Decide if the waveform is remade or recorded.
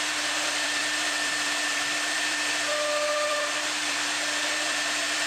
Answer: remade